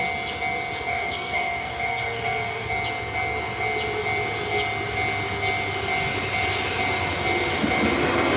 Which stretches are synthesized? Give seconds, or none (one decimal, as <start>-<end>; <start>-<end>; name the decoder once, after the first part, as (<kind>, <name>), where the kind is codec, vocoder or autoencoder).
0.9-2.7 (codec, SNAC)

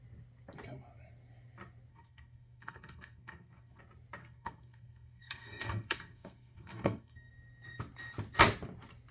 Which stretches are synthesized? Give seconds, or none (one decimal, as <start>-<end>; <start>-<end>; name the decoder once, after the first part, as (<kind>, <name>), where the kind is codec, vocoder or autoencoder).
1.9-3.8 (codec, SNAC); 4.2-7.3

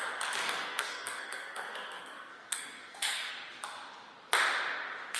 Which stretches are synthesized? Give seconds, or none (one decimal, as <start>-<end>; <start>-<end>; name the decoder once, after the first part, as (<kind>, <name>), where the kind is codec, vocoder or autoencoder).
0.4-3.3 (codec, SNAC)